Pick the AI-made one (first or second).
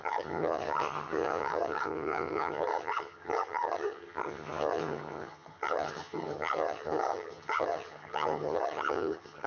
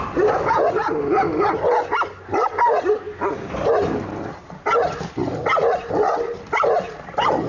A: first